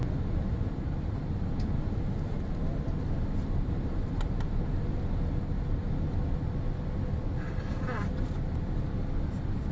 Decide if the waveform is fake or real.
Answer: real